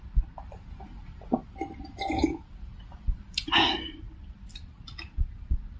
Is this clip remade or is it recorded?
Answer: recorded